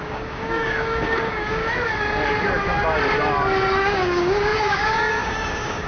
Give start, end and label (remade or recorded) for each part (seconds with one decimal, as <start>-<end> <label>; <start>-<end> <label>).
0.0-1.6 remade; 1.6-3.8 recorded; 3.8-5.9 remade